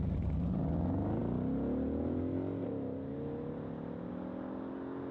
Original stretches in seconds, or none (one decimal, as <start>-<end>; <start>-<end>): 0.0-5.1